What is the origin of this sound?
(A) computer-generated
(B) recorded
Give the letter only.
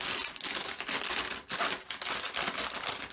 B